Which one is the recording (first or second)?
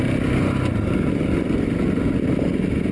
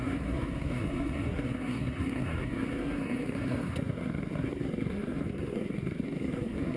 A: first